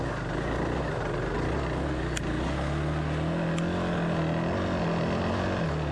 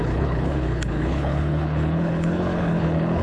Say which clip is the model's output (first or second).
second